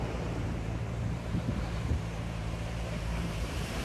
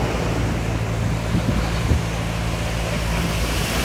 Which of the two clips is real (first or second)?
second